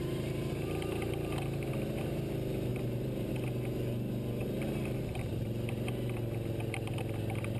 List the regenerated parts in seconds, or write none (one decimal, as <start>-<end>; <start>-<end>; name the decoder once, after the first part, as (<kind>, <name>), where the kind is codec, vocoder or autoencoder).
2.7-3.3 (vocoder, BigVGAN v2); 4.4-5.3